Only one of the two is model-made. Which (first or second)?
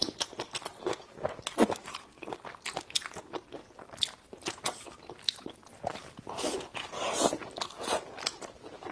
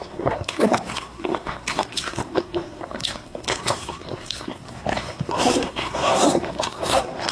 second